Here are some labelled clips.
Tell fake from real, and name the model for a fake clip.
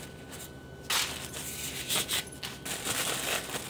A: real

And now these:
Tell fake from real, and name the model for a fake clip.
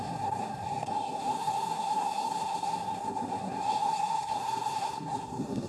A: fake, codec, SNAC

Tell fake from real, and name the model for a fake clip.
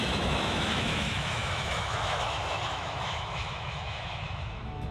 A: fake, autoencoder, DAC-VAE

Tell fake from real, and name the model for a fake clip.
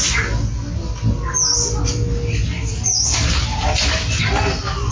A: real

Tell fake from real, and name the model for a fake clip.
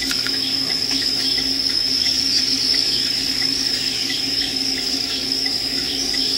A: fake, codec, DAC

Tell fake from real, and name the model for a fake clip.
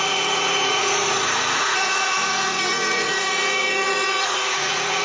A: fake, vocoder, Vocos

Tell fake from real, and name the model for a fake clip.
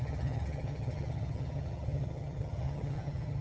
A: fake, vocoder, HiFi-GAN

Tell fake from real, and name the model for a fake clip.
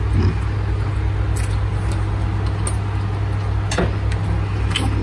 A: real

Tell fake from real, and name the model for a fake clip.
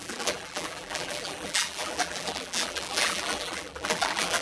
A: fake, vocoder, BigVGAN v2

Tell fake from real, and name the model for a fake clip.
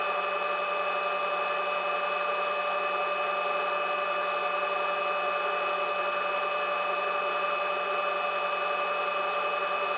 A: real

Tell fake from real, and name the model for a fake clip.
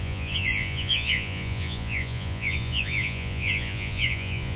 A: fake, vocoder, Vocos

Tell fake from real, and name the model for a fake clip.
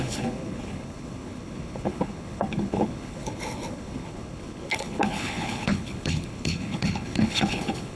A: fake, codec, HILCodec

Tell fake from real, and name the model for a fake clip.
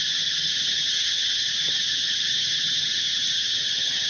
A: fake, vocoder, HiFi-GAN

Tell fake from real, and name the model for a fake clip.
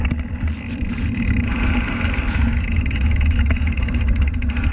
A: real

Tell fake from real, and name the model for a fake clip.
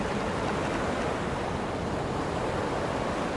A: real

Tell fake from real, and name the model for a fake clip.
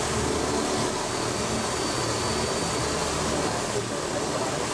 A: real